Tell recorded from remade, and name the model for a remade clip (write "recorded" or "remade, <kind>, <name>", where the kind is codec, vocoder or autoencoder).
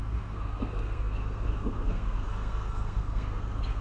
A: remade, codec, SNAC